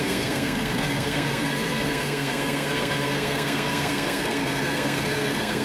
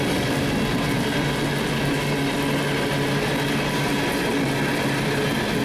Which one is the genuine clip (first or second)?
second